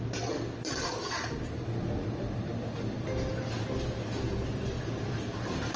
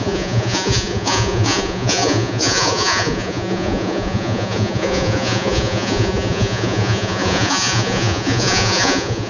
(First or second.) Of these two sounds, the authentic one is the first